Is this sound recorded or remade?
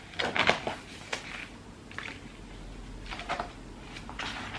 recorded